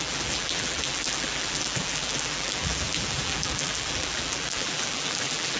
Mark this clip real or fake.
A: fake